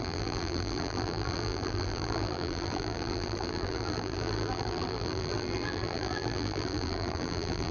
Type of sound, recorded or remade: remade